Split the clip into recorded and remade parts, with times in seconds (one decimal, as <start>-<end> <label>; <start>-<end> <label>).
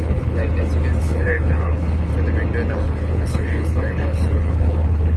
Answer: 0.0-0.4 remade; 0.4-1.0 recorded; 1.0-2.1 remade; 2.1-2.7 recorded; 2.7-5.2 remade